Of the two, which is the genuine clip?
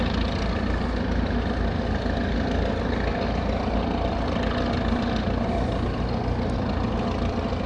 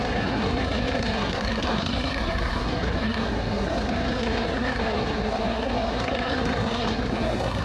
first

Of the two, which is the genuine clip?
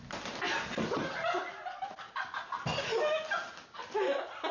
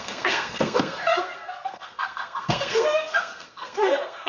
first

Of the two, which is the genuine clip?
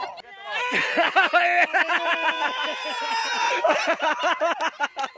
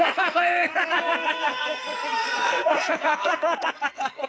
first